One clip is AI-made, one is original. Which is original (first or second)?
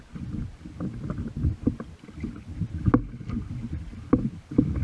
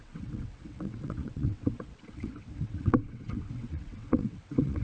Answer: first